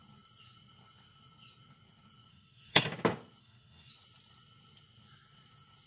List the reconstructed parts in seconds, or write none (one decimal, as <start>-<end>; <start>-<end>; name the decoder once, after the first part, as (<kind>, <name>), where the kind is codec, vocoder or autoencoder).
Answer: 2.3-2.9 (codec, SNAC); 3.4-3.9